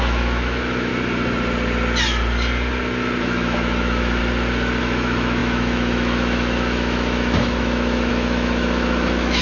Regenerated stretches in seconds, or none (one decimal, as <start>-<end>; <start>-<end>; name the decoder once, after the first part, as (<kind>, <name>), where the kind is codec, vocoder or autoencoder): 0.0-0.9 (autoencoder, DAC-VAE); 3.2-4.2; 4.8-9.4